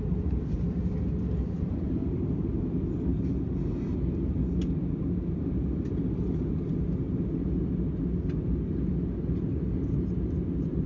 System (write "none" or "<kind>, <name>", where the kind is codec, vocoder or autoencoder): none